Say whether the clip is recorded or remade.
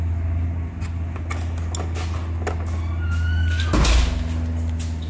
recorded